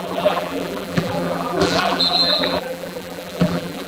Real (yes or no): no